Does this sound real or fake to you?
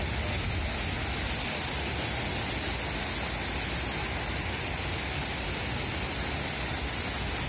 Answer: real